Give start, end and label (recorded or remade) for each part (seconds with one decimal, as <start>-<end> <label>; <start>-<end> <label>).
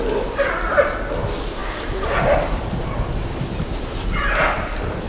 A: 0.0-5.1 recorded